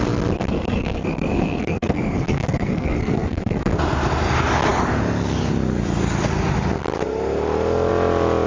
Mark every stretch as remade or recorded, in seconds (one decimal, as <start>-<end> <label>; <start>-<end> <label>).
0.0-0.4 recorded; 0.4-3.7 remade; 3.7-8.5 recorded